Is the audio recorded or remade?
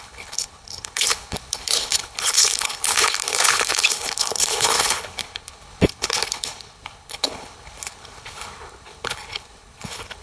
remade